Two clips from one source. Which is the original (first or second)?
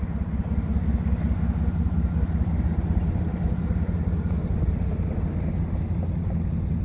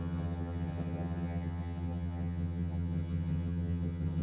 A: first